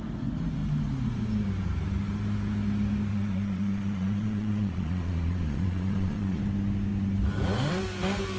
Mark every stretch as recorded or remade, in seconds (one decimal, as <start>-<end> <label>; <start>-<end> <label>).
0.0-3.1 recorded; 3.1-6.4 remade; 6.4-8.4 recorded